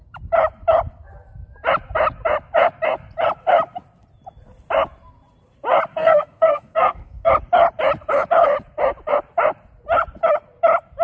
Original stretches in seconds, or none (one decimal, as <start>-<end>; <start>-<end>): 0.0-5.9; 7.3-11.0